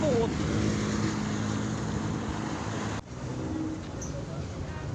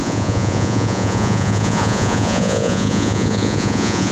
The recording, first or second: first